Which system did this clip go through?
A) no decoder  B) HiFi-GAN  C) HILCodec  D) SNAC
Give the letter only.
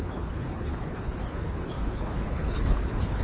C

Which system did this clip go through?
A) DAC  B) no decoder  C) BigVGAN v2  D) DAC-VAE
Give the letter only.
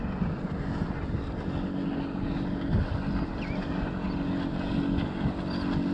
B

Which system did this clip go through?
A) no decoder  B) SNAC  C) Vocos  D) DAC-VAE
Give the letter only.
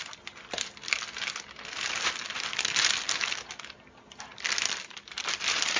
A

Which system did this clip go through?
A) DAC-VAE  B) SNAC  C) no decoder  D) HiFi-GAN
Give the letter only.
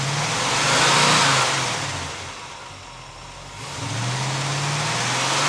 C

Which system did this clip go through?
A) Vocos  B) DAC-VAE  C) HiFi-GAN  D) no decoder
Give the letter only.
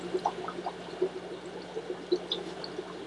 D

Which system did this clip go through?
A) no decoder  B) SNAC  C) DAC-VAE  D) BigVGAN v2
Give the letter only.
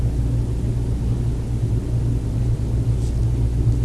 A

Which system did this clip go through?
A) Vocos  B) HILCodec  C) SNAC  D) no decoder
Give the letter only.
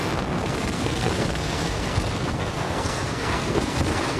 C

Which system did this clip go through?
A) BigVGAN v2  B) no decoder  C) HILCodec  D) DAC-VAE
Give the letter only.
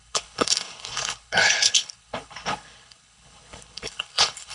C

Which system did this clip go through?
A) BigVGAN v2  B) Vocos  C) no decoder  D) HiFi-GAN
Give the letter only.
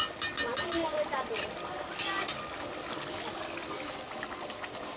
C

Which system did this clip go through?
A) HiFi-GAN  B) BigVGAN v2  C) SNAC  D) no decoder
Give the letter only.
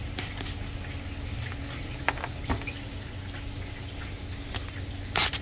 D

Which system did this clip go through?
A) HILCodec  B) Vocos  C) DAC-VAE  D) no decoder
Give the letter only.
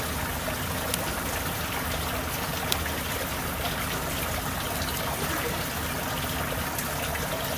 D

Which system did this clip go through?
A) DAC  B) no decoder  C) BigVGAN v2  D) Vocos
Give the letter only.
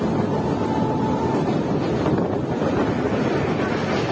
B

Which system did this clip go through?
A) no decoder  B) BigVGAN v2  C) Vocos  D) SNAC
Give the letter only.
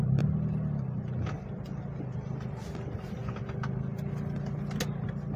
A